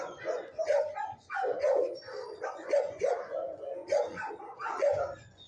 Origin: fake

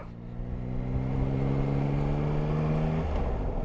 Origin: real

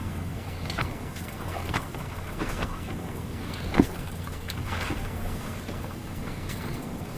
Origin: fake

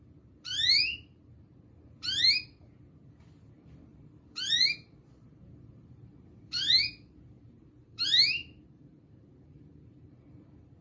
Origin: fake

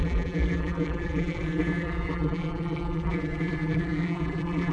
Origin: fake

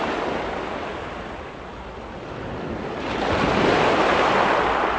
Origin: real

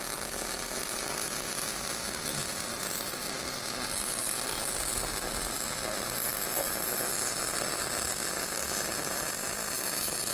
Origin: real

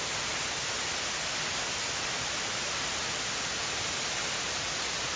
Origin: real